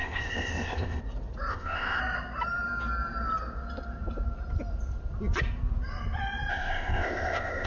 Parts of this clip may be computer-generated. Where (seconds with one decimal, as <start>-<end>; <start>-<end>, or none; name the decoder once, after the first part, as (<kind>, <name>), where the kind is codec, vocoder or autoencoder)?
0.0-1.0 (codec, ZipCodec); 1.5-2.0; 6.5-7.7